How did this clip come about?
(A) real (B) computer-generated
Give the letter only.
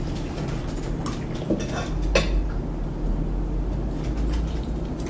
A